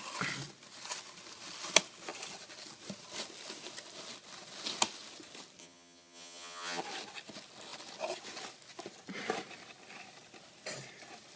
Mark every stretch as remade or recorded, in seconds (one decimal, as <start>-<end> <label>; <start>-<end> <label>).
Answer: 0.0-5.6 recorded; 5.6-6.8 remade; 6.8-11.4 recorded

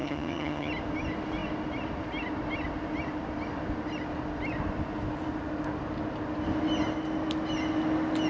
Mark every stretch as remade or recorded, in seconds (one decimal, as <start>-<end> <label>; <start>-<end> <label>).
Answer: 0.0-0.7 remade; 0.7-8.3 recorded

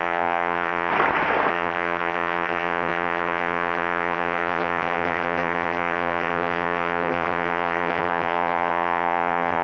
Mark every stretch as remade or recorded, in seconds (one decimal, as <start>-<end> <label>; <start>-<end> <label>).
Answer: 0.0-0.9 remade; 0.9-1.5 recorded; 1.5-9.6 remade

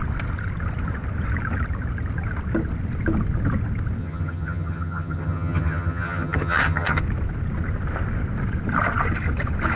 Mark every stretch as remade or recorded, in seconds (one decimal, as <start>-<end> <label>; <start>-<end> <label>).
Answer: 0.0-4.0 recorded; 4.0-7.0 remade; 7.0-9.8 recorded